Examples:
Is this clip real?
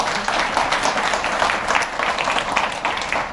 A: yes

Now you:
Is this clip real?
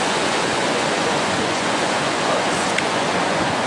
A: no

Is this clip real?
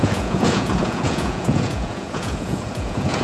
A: no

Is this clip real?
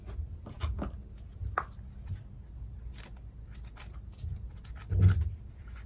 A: yes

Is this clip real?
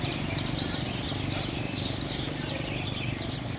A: yes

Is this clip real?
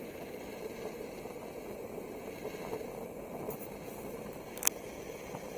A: yes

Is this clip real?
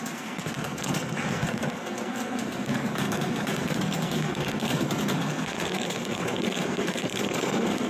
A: no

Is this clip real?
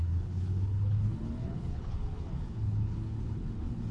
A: no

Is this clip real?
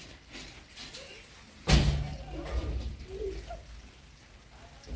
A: yes